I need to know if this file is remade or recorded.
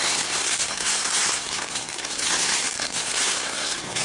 remade